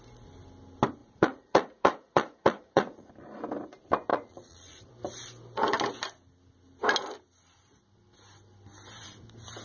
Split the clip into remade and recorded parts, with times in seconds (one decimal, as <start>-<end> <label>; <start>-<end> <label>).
0.0-1.0 recorded; 1.0-3.1 remade; 3.1-4.1 recorded; 4.1-4.9 remade; 4.9-9.6 recorded